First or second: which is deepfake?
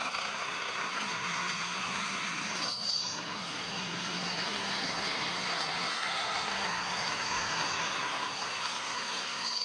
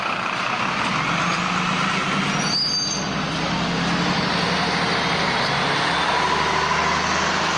first